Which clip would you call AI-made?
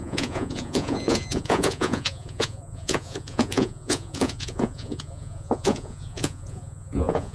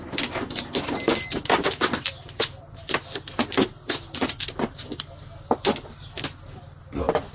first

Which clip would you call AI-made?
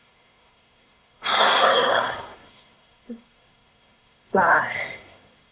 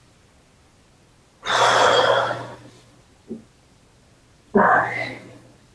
first